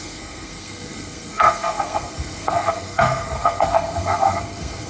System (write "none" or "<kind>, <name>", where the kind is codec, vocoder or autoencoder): codec, SNAC